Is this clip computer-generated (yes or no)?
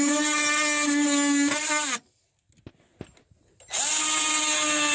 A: no